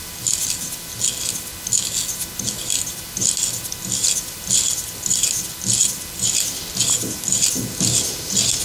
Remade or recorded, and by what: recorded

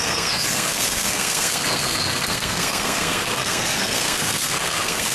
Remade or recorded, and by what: remade, codec, SNAC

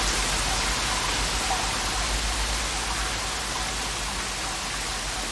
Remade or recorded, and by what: recorded